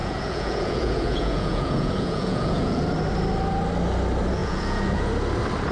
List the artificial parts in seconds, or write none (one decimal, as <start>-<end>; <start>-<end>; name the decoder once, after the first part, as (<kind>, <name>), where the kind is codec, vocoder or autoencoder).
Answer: 0.0-2.8 (vocoder, Vocos); 4.4-5.0